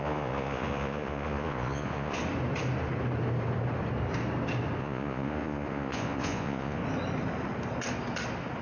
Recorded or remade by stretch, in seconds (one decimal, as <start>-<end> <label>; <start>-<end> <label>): 0.0-2.2 remade; 2.2-4.8 recorded; 4.8-6.8 remade; 6.8-8.6 recorded